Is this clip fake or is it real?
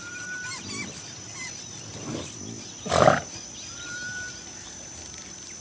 fake